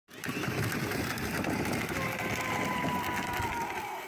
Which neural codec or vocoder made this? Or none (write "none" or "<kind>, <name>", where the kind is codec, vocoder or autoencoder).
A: none